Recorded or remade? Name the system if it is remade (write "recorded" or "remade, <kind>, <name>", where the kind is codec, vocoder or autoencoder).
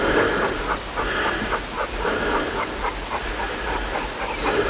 recorded